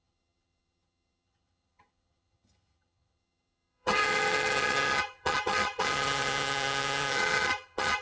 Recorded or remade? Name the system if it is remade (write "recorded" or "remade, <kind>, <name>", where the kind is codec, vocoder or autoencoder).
remade, vocoder, HiFi-GAN